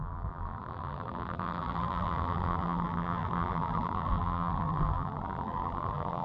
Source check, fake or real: fake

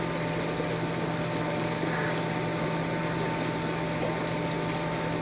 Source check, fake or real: real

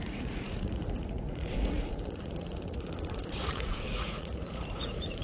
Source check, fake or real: fake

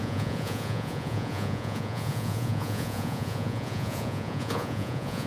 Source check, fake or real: fake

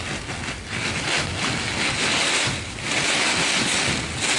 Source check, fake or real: real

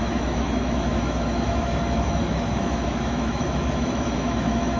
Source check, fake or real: fake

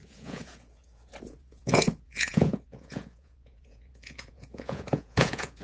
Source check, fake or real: fake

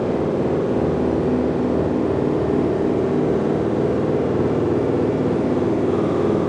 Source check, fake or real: real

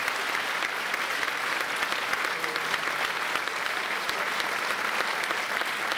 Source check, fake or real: real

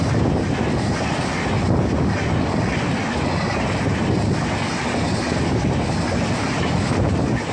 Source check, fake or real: real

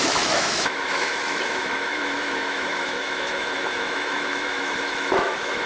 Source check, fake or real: fake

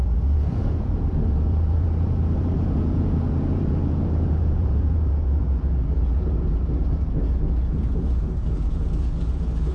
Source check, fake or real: fake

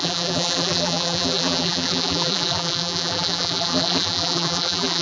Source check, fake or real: fake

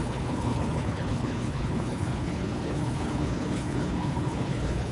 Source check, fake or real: fake